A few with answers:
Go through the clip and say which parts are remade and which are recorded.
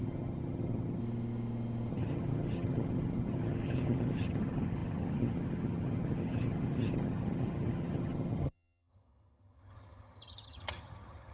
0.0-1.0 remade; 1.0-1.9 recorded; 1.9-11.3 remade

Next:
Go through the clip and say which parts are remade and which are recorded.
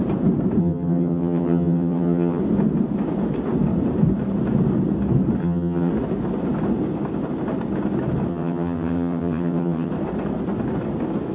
0.0-0.6 recorded; 0.6-2.4 remade; 2.4-5.4 recorded; 5.4-5.9 remade; 5.9-8.3 recorded; 8.3-9.9 remade; 9.9-11.3 recorded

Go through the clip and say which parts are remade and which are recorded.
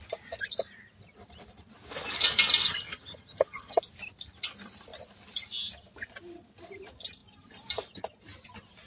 0.0-2.6 recorded; 2.6-3.8 remade; 3.8-8.9 recorded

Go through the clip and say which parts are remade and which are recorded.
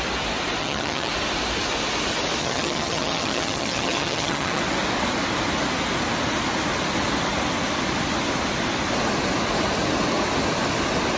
0.0-0.6 recorded; 0.6-1.1 remade; 1.1-2.4 recorded; 2.4-4.6 remade; 4.6-11.2 recorded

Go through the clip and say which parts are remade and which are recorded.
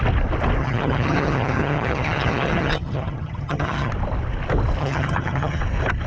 0.0-0.6 recorded; 0.6-3.9 remade; 3.9-4.8 recorded; 4.8-5.6 remade; 5.6-6.1 recorded